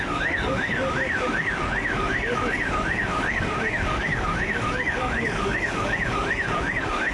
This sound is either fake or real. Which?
fake